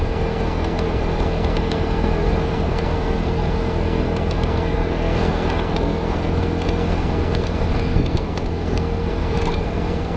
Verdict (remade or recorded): remade